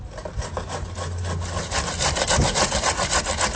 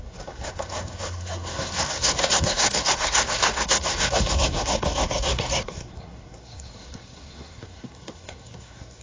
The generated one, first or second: second